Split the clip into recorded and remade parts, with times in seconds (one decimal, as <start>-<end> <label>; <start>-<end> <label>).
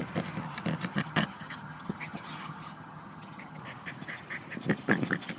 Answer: 0.0-0.9 recorded; 0.9-3.6 remade; 3.6-5.4 recorded